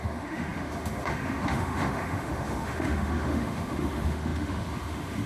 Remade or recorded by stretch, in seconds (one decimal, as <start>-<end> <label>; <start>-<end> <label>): 0.0-5.3 remade